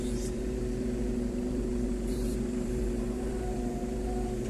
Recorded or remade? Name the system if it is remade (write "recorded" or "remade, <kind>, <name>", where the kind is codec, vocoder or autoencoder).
remade, vocoder, BigVGAN v2